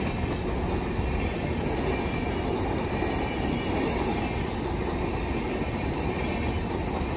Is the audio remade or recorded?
recorded